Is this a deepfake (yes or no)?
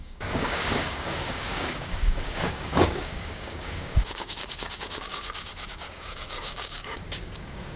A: yes